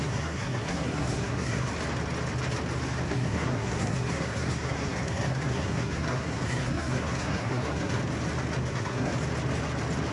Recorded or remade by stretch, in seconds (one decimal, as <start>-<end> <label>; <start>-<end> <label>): 0.0-1.7 remade; 1.7-3.1 recorded; 3.1-8.0 remade; 8.0-8.7 recorded; 8.7-9.1 remade; 9.1-10.1 recorded